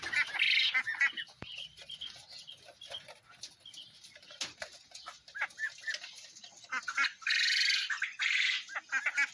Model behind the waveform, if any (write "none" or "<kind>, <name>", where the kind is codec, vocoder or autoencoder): none